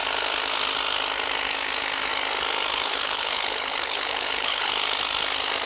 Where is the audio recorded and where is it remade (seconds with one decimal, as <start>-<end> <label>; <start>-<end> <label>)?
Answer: 0.0-2.7 recorded; 2.7-4.7 remade; 4.7-5.7 recorded